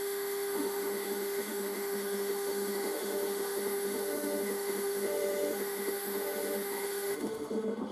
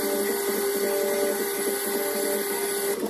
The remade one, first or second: first